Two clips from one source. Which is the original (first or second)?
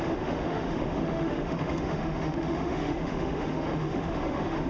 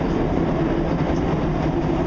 second